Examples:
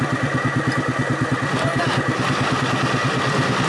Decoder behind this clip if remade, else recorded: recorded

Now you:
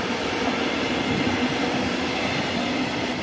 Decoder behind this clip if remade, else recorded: remade, vocoder, BigVGAN v2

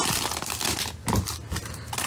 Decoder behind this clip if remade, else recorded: recorded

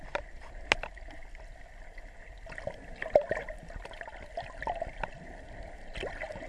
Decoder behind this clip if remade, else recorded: recorded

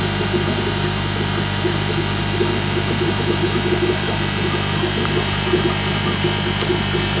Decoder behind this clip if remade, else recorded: remade, vocoder, BigVGAN v2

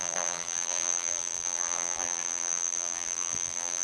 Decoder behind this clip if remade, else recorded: remade, vocoder, BigVGAN v2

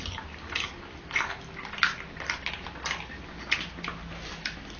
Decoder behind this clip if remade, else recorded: recorded